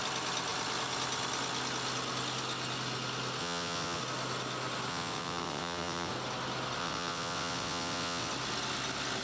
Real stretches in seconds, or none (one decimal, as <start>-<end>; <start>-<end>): 0.0-3.4; 4.0-4.9; 6.1-6.8; 8.3-9.2